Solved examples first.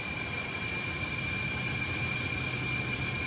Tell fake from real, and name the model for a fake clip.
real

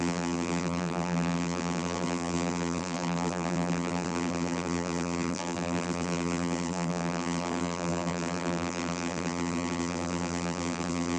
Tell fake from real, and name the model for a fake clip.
fake, vocoder, BigVGAN v2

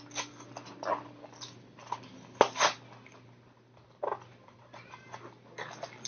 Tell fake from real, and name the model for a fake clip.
real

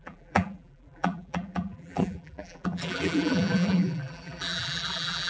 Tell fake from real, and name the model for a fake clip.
fake, vocoder, BigVGAN v2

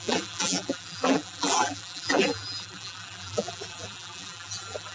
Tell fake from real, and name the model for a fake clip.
fake, vocoder, BigVGAN v2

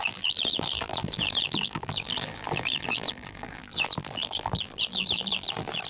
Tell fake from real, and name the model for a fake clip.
fake, vocoder, BigVGAN v2